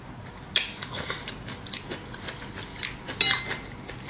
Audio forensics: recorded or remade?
recorded